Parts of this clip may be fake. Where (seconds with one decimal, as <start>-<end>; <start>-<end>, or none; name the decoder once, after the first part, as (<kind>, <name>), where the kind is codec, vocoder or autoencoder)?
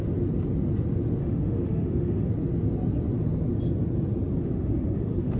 1.2-2.3 (autoencoder, DAC-VAE); 4.4-5.4